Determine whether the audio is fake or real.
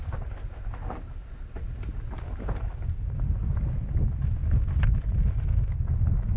real